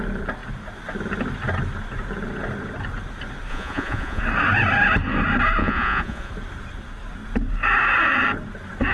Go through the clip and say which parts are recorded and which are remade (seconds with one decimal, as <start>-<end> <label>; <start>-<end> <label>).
0.0-3.5 recorded; 3.5-4.2 remade; 4.2-5.6 recorded; 5.6-6.3 remade; 6.3-8.9 recorded